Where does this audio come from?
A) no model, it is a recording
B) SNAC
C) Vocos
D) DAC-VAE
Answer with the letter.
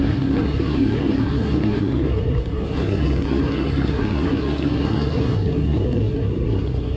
B